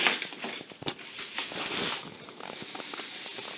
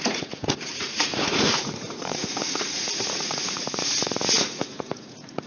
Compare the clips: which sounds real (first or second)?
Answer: first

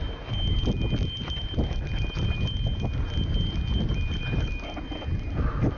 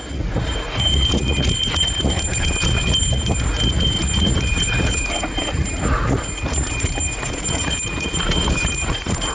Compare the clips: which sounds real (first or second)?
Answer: first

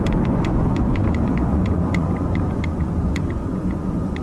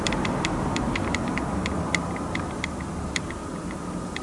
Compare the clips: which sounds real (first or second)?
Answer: second